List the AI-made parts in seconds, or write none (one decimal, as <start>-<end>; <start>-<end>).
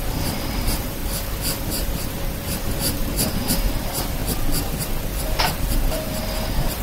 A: 0.0-1.0; 1.6-4.2; 5.2-6.8